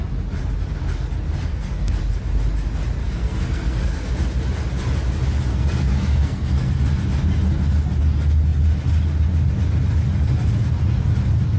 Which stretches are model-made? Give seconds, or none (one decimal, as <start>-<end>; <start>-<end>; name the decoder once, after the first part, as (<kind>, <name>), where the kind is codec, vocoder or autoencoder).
1.5-2.0 (codec, SNAC); 3.0-4.1; 5.5-6.8